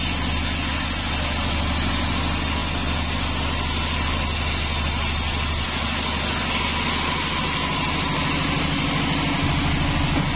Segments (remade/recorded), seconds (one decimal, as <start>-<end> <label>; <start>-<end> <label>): 0.0-10.4 recorded